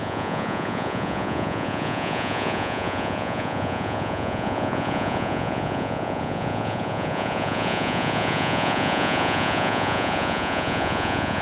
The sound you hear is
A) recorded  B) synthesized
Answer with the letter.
B